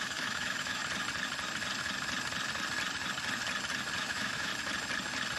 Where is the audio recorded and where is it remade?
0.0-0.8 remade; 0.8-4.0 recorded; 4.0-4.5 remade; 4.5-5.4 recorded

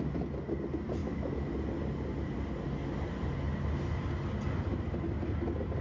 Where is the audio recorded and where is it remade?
0.0-1.0 recorded; 1.0-1.5 remade; 1.5-5.8 recorded

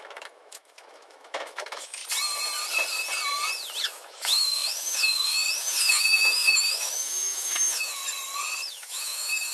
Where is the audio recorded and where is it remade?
0.0-2.0 remade; 2.0-3.8 recorded; 3.8-8.0 remade; 8.0-8.7 recorded; 8.7-9.5 remade

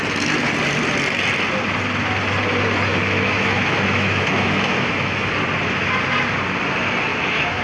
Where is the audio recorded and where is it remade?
0.0-2.9 recorded; 2.9-5.3 remade; 5.3-7.1 recorded; 7.1-7.6 remade

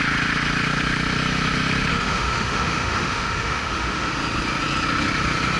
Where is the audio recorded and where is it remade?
0.0-1.9 recorded; 1.9-4.1 remade; 4.1-5.6 recorded

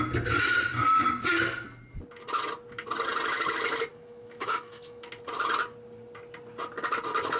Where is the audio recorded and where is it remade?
0.0-3.9 recorded; 3.9-5.1 remade; 5.1-7.4 recorded

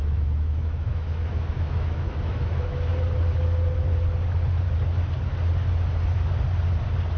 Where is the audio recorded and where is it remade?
0.0-2.9 remade; 2.9-7.2 recorded

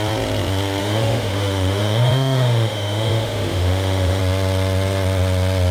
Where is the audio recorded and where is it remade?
0.0-0.8 recorded; 0.8-4.2 remade; 4.2-5.7 recorded